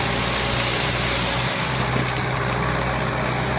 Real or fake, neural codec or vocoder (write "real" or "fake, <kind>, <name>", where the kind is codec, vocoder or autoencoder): real